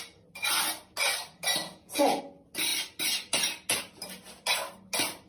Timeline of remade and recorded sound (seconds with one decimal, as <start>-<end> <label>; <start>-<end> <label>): 0.0-1.6 recorded; 1.6-2.2 remade; 2.2-5.3 recorded